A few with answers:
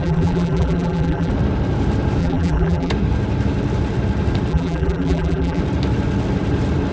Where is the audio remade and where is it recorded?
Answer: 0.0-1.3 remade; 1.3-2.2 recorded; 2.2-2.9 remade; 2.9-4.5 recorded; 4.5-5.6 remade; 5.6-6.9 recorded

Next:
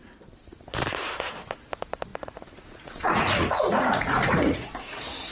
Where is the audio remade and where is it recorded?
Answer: 0.0-2.1 recorded; 2.1-5.3 remade

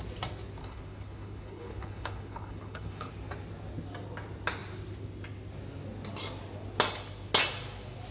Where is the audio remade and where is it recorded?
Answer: 0.0-0.6 recorded; 0.6-3.1 remade; 3.1-8.1 recorded